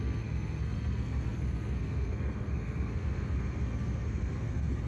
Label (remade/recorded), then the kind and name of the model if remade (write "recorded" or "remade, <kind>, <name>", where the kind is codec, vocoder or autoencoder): remade, codec, SNAC